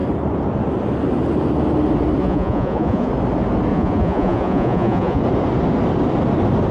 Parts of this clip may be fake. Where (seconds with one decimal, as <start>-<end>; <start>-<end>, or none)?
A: 2.2-3.1; 3.7-5.2